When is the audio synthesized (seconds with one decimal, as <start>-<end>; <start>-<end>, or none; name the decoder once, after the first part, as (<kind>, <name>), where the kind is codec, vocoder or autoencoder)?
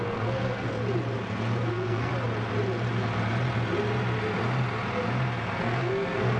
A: 0.0-0.8 (codec, SNAC); 1.7-2.1; 5.6-6.4